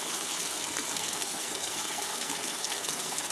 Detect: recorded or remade remade